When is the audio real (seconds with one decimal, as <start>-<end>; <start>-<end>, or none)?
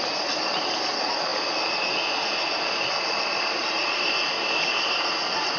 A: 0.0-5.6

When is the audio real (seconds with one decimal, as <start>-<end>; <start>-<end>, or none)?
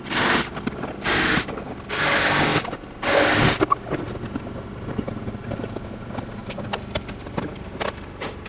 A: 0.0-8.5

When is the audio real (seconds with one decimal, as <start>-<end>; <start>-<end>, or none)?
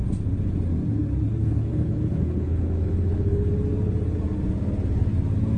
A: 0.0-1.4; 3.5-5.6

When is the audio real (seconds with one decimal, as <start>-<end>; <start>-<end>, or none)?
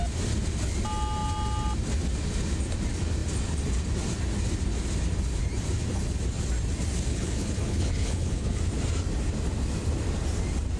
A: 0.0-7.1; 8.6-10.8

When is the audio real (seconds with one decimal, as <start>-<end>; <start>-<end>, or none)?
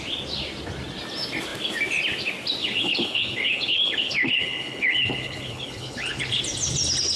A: 0.0-2.6; 6.4-7.2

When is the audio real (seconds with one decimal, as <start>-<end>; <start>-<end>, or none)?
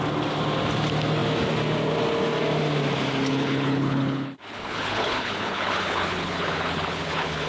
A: 0.0-3.3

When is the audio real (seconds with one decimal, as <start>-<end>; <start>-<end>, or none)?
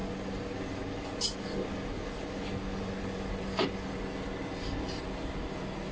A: 0.0-5.9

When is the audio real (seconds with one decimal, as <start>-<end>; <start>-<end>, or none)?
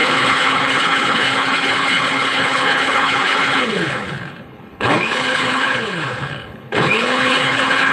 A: none